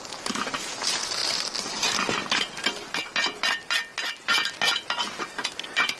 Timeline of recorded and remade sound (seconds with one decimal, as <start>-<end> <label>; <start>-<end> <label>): 0.0-6.0 recorded